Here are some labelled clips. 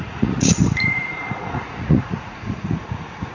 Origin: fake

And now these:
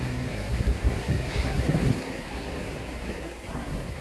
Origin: fake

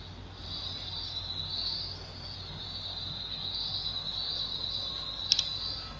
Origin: real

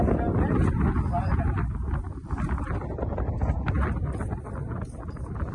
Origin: real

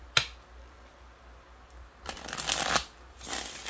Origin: real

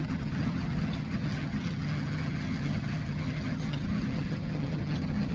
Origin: fake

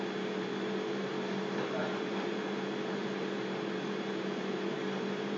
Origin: fake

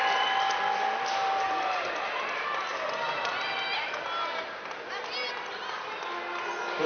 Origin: real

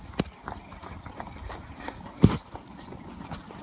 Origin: real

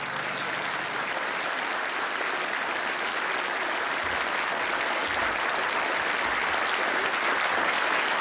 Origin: real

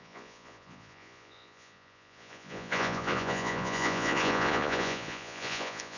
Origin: fake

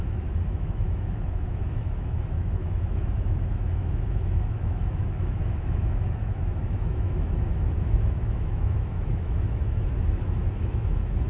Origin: fake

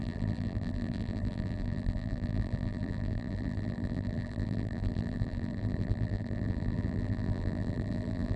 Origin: fake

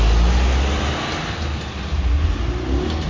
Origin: real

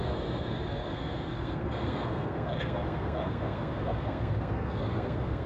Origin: fake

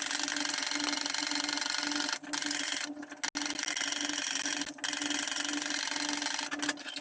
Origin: real